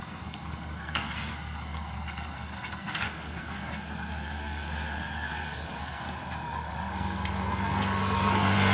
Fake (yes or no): yes